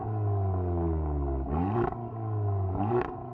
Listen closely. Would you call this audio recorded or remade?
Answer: remade